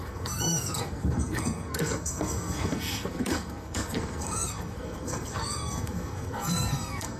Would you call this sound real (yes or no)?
no